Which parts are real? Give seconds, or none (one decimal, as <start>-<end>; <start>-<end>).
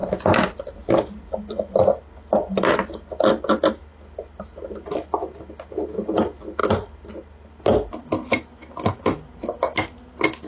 0.0-10.5